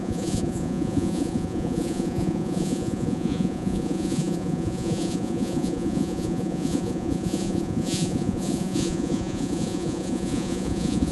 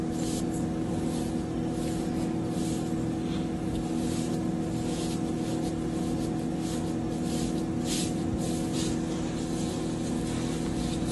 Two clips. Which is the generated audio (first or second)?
first